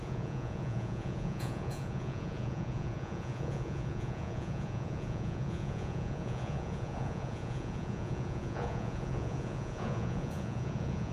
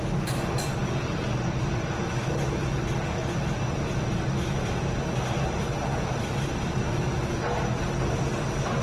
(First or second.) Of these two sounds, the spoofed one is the first